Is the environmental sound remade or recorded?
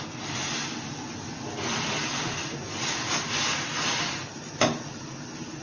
recorded